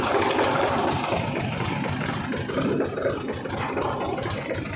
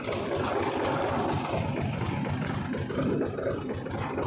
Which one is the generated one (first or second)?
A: first